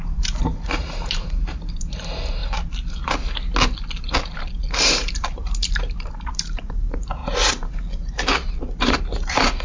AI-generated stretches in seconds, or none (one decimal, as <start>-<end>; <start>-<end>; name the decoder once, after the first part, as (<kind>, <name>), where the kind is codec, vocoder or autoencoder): 0.0-2.4 (vocoder, BigVGAN v2); 4.8-7.2; 8.8-9.6